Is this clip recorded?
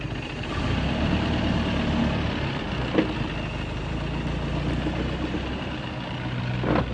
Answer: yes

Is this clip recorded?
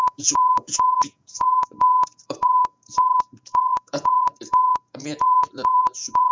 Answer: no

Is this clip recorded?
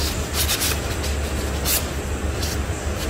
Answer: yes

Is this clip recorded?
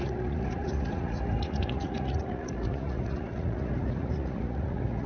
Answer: no